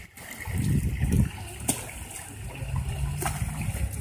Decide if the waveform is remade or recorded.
recorded